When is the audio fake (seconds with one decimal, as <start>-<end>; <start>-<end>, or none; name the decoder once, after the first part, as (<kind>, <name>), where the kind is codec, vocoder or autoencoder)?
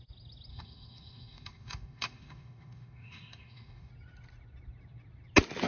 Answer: 0.5-3.9 (autoencoder, DAC-VAE)